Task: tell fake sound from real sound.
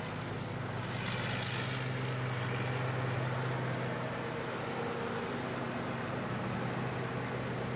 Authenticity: real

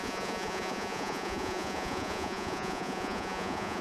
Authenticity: fake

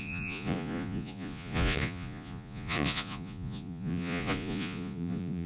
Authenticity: fake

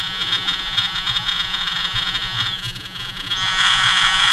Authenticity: fake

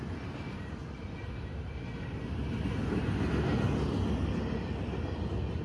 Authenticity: real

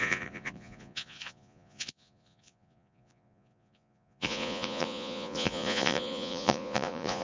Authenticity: fake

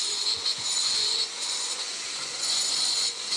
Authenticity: fake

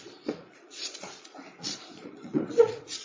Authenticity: fake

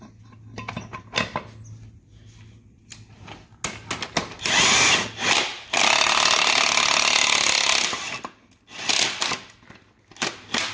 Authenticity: real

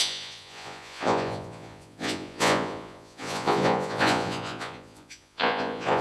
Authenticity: fake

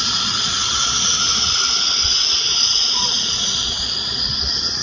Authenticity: fake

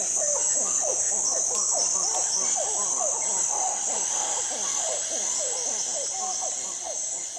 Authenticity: real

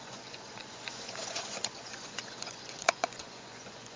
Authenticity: fake